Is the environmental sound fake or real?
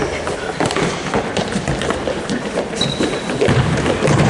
real